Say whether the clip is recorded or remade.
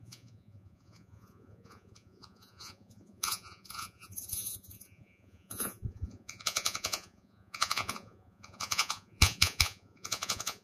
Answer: remade